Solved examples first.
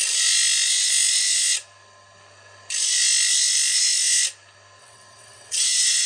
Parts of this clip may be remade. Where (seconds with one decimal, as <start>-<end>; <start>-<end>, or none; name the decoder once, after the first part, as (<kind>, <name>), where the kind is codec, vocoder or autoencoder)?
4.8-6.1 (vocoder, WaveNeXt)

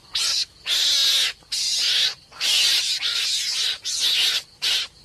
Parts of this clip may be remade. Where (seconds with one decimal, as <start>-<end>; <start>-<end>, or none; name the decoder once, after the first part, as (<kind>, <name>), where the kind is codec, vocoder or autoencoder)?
none

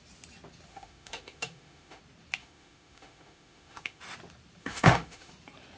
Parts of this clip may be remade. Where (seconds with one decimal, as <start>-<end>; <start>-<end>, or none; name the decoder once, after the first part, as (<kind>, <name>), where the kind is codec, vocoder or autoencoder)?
0.7-2.0 (autoencoder, DAC-VAE); 2.4-4.0; 4.6-5.3

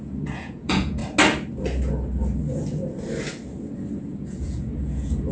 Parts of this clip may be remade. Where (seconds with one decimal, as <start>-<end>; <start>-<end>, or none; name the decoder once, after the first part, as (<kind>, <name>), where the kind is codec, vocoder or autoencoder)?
0.0-1.0 (vocoder, Vocos); 3.9-5.3

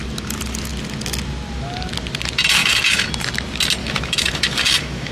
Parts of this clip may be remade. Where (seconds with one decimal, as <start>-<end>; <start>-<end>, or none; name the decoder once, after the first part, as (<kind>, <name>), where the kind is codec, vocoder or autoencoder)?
2.6-3.1 (autoencoder, DAC-VAE); 3.8-5.1

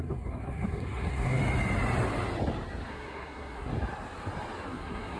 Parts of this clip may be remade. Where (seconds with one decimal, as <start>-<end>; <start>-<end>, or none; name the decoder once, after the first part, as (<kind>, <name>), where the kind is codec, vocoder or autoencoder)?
0.0-1.4 (codec, SNAC); 2.9-3.7; 4.7-5.2

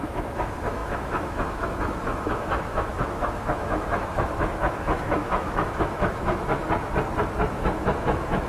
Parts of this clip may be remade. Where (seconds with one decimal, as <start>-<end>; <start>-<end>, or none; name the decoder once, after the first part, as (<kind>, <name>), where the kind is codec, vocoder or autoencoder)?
0.0-6.6 (autoencoder, DAC-VAE); 7.5-8.5